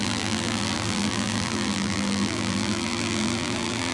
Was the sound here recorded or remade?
remade